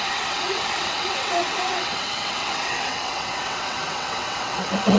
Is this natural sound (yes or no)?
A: no